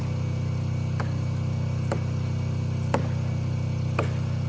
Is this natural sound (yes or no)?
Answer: yes